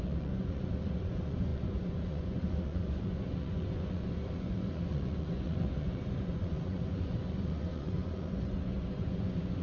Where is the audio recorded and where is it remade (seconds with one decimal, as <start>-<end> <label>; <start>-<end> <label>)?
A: 0.0-9.6 remade